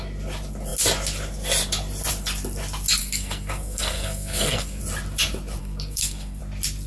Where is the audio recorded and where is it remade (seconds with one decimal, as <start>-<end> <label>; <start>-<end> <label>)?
0.0-3.0 recorded; 3.0-4.8 remade; 4.8-5.6 recorded; 5.6-6.4 remade; 6.4-6.9 recorded